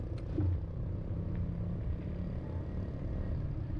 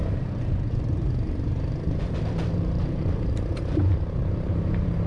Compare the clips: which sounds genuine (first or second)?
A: first